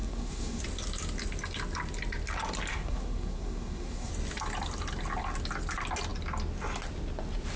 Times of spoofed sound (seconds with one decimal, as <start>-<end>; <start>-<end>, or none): 0.0-0.6; 2.7-4.1